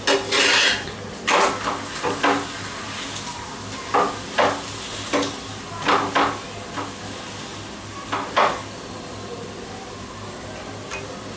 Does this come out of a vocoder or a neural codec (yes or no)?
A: no